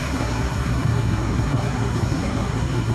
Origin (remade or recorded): remade